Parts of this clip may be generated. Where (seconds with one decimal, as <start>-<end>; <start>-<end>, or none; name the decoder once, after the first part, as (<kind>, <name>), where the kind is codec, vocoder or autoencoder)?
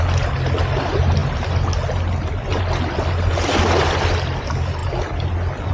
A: none